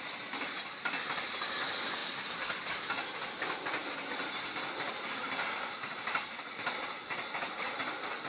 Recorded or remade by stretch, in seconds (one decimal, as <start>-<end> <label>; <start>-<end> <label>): 0.0-8.3 recorded